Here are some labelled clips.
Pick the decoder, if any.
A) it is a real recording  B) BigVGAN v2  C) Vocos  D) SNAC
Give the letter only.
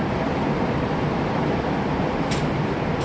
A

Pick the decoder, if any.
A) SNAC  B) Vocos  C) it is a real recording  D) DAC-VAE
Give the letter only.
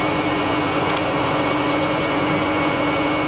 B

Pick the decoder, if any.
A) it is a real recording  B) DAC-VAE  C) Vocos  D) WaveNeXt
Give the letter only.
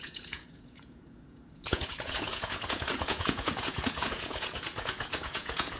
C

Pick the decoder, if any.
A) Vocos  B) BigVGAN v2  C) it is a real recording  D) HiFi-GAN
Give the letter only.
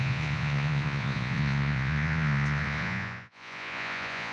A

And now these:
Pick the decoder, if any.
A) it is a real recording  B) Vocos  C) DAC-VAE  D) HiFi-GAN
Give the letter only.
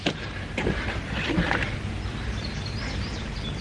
A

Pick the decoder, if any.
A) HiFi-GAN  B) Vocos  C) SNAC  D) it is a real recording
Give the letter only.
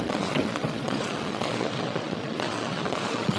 B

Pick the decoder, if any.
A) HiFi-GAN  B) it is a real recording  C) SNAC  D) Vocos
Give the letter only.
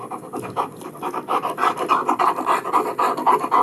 B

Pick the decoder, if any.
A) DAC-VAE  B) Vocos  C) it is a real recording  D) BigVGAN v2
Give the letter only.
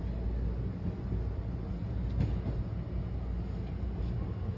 C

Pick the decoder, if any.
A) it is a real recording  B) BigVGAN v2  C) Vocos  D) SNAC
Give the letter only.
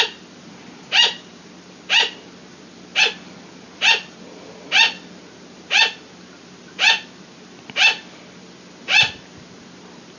A